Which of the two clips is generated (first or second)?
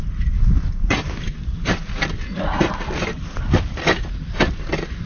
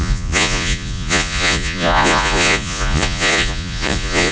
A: second